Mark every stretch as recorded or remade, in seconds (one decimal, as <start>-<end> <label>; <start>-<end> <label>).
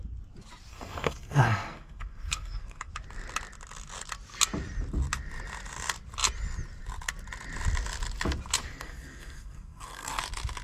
0.0-0.7 recorded; 0.7-2.9 remade; 2.9-8.6 recorded; 8.6-10.2 remade; 10.2-10.6 recorded